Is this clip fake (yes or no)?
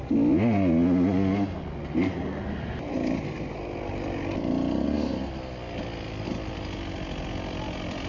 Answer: no